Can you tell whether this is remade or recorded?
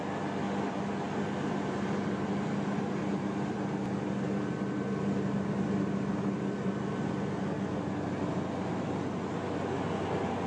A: recorded